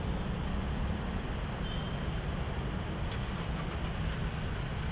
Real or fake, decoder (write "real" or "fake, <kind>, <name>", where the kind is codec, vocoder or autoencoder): real